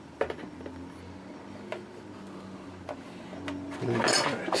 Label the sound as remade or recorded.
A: recorded